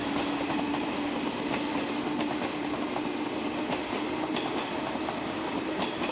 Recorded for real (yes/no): yes